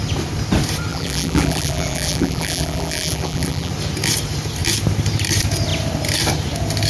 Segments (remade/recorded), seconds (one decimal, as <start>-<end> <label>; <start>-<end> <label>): 0.0-0.9 recorded; 0.9-3.7 remade; 3.7-6.9 recorded